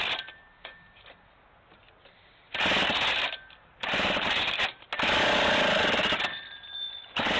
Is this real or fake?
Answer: real